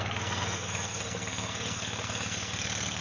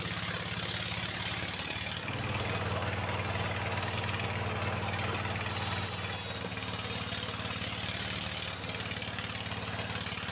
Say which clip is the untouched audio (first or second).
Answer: second